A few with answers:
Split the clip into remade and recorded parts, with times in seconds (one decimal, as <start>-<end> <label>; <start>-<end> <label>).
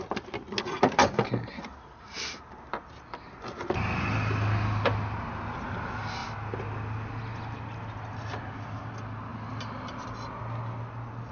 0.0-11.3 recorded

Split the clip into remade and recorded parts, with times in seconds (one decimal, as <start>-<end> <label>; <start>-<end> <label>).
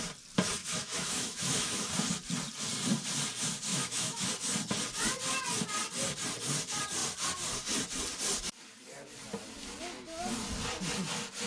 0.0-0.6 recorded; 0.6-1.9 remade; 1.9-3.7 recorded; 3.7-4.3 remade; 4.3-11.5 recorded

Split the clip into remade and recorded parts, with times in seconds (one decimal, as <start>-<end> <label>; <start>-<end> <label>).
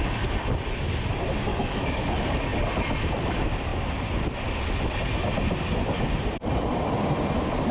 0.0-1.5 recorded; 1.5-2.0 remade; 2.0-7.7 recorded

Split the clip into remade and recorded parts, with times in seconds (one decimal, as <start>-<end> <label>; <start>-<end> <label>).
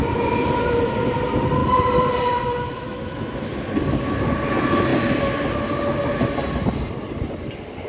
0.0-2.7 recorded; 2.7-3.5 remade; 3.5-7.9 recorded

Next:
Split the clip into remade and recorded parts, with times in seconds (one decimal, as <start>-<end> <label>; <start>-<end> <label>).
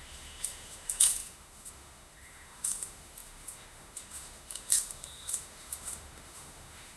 0.0-7.0 remade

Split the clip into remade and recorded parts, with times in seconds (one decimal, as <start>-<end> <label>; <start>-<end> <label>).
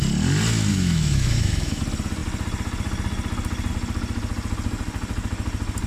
0.0-0.7 recorded; 0.7-1.8 remade; 1.8-5.9 recorded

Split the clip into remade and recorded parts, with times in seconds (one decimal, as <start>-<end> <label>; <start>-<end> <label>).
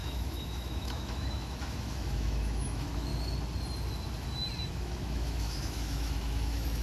0.0-3.1 remade; 3.1-4.7 recorded; 4.7-6.8 remade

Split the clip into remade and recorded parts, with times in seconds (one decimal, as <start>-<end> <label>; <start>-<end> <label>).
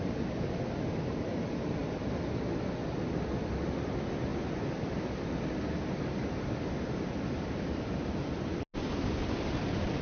0.0-10.0 recorded